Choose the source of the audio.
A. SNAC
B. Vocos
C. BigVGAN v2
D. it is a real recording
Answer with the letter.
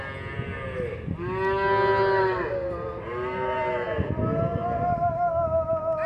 D